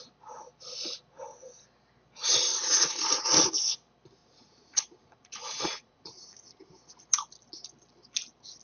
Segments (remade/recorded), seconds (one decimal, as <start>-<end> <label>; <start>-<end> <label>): 0.0-2.5 recorded; 2.5-3.5 remade; 3.5-4.2 recorded; 4.2-6.7 remade; 6.7-8.6 recorded